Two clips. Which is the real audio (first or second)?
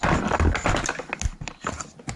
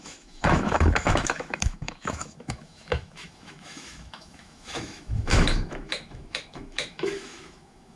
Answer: first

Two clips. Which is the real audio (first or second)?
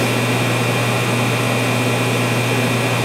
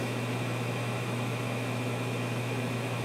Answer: first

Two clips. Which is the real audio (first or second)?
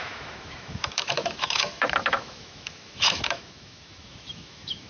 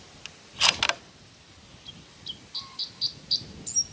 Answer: second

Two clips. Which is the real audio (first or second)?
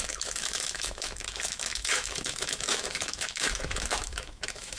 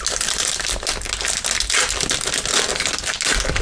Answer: second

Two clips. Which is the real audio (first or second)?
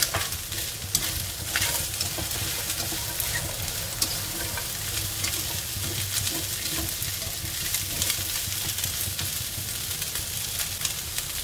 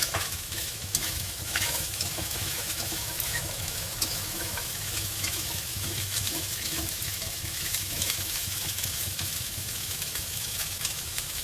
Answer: first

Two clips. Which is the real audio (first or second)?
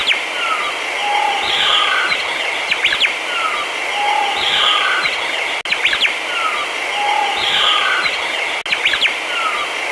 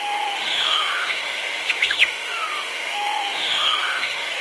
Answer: first